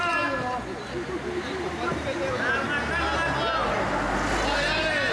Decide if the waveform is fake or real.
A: real